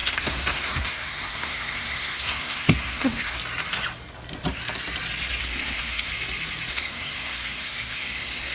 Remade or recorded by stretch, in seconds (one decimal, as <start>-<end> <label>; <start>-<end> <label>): 0.0-3.4 remade; 3.4-5.4 recorded; 5.4-6.1 remade; 6.1-6.7 recorded; 6.7-8.5 remade

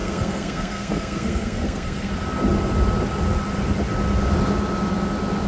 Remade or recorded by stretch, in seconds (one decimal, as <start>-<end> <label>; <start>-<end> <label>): 0.0-2.1 remade; 2.1-5.5 recorded

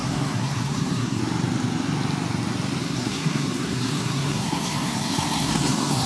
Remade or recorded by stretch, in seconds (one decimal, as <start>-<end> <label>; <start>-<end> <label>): 0.0-1.2 remade; 1.2-2.8 recorded; 2.8-6.1 remade

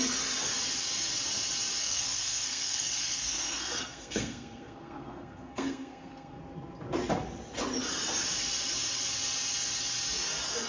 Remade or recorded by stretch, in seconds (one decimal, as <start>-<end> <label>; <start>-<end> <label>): 0.0-1.8 recorded; 1.8-6.4 remade; 6.4-10.7 recorded

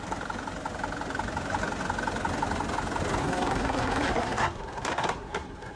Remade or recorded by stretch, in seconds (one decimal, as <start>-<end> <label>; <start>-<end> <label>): 0.0-3.2 recorded; 3.2-5.8 remade

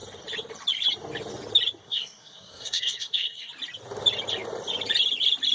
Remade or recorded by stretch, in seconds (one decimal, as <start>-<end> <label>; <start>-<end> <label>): 0.0-1.8 recorded; 1.8-3.5 remade; 3.5-5.5 recorded

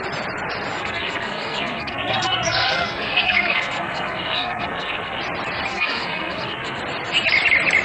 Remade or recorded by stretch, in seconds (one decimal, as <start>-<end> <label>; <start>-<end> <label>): 0.0-0.8 recorded; 0.8-5.2 remade; 5.2-5.7 recorded; 5.7-6.8 remade; 6.8-7.8 recorded